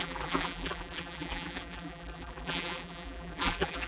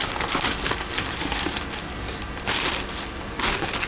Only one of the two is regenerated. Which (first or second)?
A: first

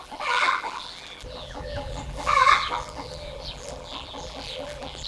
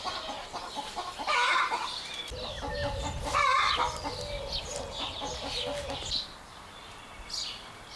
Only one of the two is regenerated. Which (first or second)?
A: first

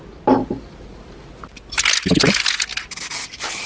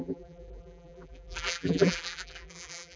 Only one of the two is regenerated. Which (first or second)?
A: second